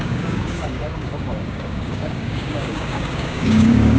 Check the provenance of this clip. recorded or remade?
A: remade